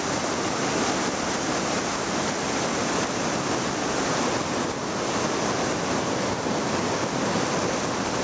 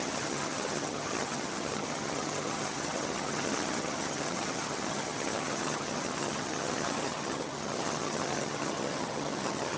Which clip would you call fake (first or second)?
second